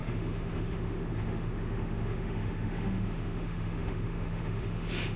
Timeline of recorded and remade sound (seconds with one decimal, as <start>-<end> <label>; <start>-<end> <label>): 0.0-5.2 remade